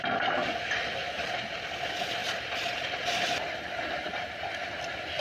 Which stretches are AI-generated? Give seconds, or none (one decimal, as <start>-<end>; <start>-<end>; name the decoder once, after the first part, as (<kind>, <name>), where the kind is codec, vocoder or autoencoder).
2.2-4.2 (vocoder, BigVGAN v2)